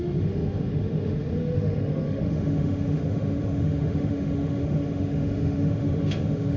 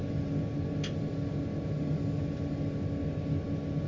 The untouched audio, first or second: second